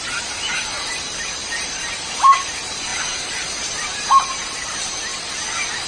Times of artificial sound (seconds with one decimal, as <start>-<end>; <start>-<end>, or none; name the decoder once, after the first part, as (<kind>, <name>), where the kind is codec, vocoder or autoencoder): 0.0-5.1 (vocoder, BigVGAN v2)